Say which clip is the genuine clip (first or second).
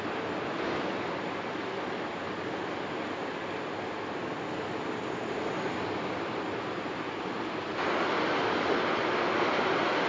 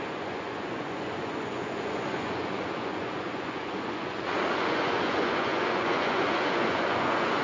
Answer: first